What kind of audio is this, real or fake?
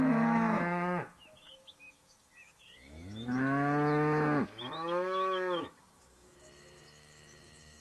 fake